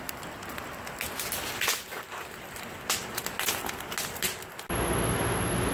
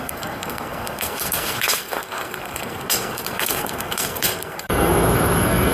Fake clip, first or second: second